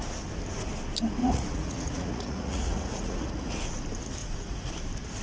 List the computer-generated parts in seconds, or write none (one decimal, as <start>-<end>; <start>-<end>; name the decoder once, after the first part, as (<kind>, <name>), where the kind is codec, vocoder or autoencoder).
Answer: 1.2-3.5 (vocoder, Vocos); 4.2-4.7